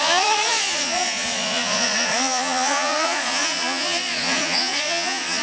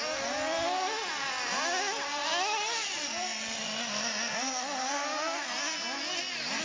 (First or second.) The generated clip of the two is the first